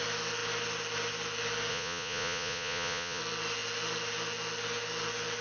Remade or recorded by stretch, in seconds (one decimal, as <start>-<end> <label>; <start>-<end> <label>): 0.0-1.7 recorded; 1.7-3.2 remade; 3.2-5.4 recorded